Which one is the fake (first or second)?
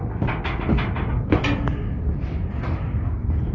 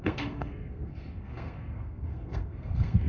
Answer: second